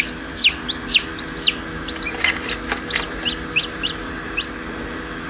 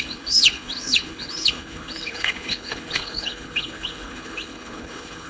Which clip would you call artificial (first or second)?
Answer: second